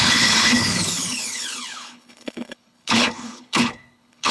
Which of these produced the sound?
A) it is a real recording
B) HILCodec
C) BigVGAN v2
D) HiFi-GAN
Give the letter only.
B